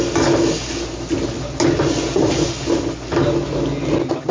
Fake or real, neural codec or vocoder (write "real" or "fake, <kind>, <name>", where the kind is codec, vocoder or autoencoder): real